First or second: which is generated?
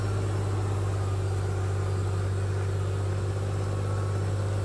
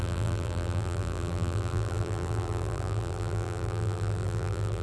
second